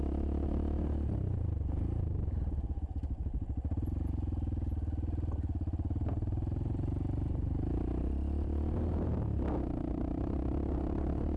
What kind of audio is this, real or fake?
real